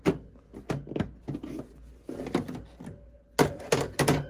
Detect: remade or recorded recorded